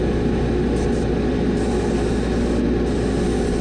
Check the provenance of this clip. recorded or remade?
recorded